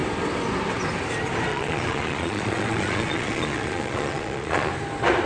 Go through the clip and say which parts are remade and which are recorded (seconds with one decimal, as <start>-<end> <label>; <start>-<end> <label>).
0.0-1.5 recorded; 1.5-4.7 remade; 4.7-5.3 recorded

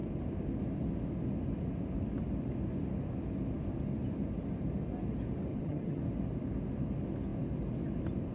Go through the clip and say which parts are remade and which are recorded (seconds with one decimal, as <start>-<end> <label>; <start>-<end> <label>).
0.0-5.5 recorded; 5.5-6.0 remade; 6.0-8.3 recorded

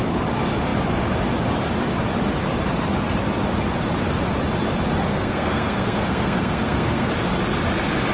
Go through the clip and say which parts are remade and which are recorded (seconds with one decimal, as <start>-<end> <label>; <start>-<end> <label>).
0.0-5.1 recorded; 5.1-7.1 remade; 7.1-8.1 recorded

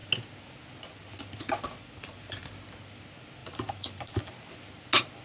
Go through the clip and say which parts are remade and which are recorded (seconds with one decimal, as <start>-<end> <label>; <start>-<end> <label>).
0.0-1.8 recorded; 1.8-2.5 remade; 2.5-3.4 recorded; 3.4-4.3 remade; 4.3-5.2 recorded

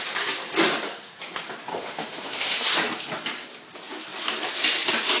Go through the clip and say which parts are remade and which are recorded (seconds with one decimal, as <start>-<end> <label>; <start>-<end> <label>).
0.0-1.7 recorded; 1.7-2.6 remade; 2.6-5.2 recorded